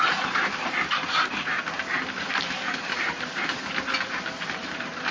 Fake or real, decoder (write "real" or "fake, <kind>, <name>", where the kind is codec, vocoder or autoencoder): real